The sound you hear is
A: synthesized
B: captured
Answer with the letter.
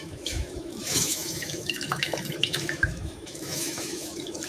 A